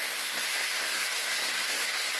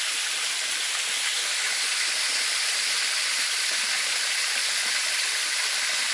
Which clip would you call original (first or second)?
second